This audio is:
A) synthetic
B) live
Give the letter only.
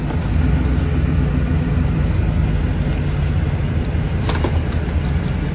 B